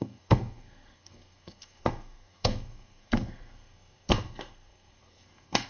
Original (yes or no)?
no